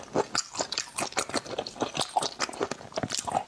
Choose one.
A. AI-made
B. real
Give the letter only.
B